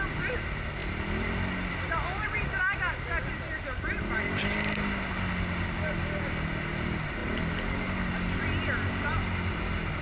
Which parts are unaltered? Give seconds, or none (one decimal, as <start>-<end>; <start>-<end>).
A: 0.0-10.0